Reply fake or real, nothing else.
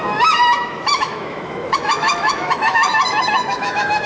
fake